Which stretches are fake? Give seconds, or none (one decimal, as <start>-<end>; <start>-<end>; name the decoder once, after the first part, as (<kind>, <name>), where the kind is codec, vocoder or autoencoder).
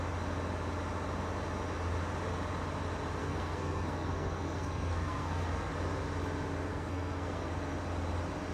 3.2-5.7 (codec, SNAC); 6.7-7.5